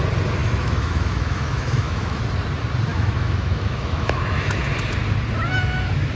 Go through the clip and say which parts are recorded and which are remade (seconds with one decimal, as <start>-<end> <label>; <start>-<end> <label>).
0.0-0.4 recorded; 0.4-2.2 remade; 2.2-2.9 recorded; 2.9-4.6 remade; 4.6-6.2 recorded